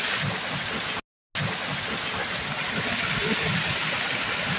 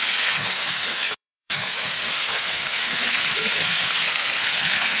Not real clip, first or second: second